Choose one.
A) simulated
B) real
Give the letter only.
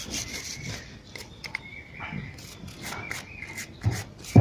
B